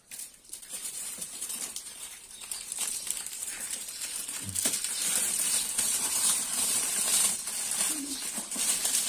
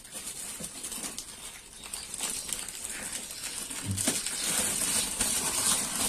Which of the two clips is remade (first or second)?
first